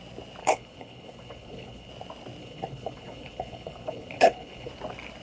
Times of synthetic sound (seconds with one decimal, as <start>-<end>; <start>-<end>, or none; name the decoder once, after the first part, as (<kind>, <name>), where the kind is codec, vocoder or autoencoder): 0.4-1.9 (codec, HILCodec); 2.4-4.7